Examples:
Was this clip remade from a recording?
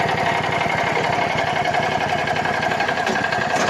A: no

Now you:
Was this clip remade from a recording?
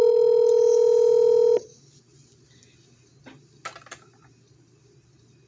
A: no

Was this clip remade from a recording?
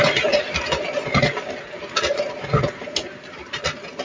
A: yes